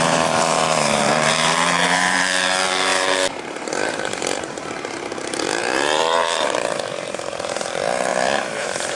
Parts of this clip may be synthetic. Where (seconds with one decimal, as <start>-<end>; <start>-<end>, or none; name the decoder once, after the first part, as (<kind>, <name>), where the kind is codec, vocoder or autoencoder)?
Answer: 0.0-8.1 (vocoder, BigVGAN v2); 8.6-9.0